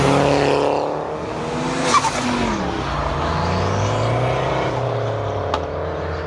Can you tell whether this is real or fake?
real